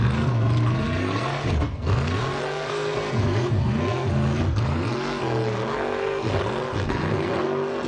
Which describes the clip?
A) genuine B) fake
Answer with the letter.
B